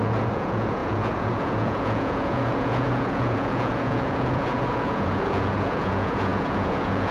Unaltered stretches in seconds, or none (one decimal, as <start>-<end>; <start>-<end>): none